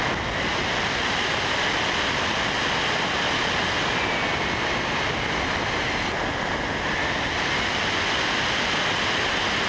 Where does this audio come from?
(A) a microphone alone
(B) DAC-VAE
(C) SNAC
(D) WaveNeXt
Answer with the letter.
A